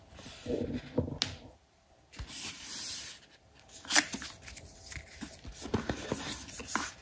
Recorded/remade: recorded